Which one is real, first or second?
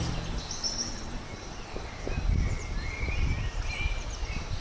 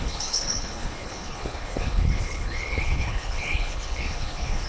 first